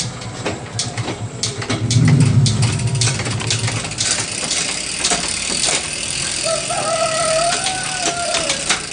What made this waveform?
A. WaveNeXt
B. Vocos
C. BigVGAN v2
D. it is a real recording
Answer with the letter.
C